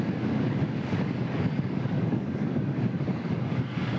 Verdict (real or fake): fake